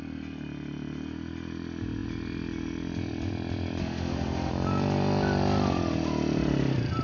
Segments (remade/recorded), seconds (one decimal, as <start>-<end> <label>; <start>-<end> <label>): 0.0-3.8 recorded; 3.8-4.5 remade; 4.5-7.0 recorded